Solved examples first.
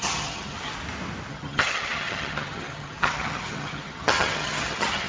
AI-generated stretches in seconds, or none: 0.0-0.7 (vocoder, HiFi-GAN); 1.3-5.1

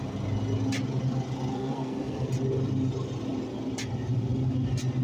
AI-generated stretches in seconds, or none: 1.5-2.3 (codec, SNAC)

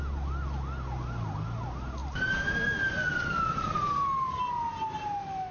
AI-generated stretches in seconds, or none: none

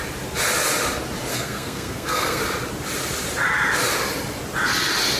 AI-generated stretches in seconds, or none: 1.3-2.4 (codec, SNAC)

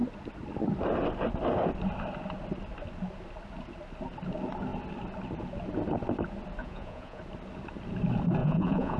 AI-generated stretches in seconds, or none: 6.6-7.2 (vocoder, Vocos); 8.4-9.0

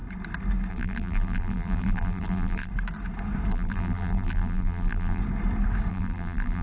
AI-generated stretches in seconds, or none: 0.7-2.7 (vocoder, BigVGAN v2); 3.5-5.2; 5.9-6.6

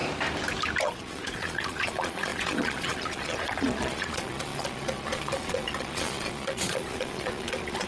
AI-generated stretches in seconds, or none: 0.8-7.9 (vocoder, Vocos)